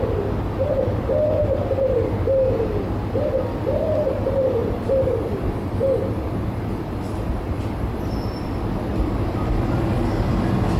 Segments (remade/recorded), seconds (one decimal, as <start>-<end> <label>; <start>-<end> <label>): 0.0-4.6 recorded; 4.6-8.2 remade; 8.2-10.8 recorded